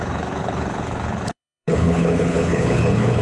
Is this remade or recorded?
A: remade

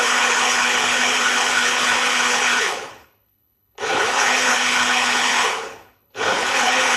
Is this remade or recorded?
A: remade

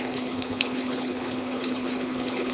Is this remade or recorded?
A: remade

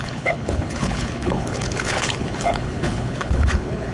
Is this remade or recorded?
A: remade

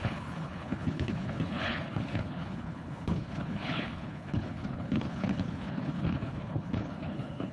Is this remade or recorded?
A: remade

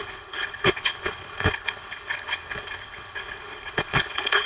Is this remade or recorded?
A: remade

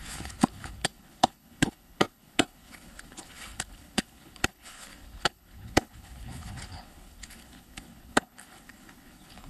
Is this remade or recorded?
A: remade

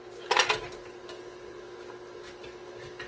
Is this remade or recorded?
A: recorded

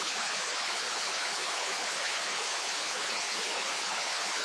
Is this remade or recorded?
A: remade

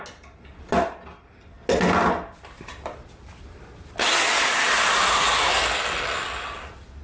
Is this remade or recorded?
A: recorded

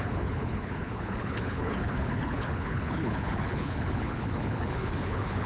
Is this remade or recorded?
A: remade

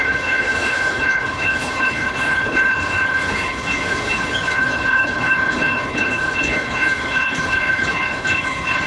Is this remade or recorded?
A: remade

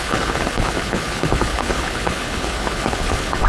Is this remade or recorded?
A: remade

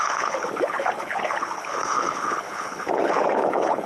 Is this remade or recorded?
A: remade